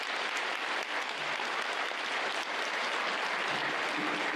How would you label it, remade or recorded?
recorded